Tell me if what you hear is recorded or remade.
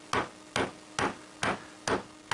recorded